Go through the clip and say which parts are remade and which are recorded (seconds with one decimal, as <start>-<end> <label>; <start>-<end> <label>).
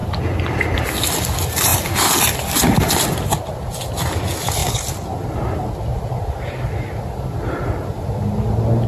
0.0-8.9 recorded